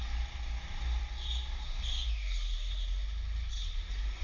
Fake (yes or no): no